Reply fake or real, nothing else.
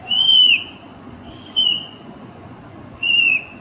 fake